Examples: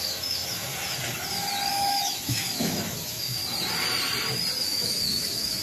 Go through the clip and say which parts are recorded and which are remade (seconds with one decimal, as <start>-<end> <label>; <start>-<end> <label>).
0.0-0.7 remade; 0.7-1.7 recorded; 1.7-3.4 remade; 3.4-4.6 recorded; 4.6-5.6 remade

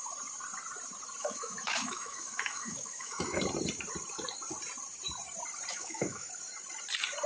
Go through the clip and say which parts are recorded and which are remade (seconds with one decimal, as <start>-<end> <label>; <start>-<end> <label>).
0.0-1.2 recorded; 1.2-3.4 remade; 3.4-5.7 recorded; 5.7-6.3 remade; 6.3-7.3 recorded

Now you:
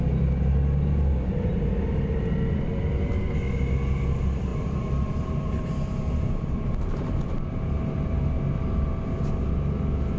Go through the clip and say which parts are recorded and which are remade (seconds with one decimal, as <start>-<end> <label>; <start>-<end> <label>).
0.0-4.5 recorded; 4.5-8.8 remade; 8.8-10.2 recorded